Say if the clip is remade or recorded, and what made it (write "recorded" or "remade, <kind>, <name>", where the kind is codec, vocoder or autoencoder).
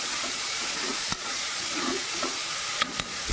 remade, vocoder, Vocos